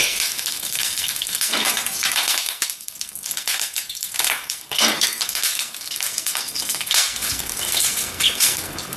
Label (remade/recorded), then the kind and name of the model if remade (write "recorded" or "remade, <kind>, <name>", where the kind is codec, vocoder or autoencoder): remade, codec, SNAC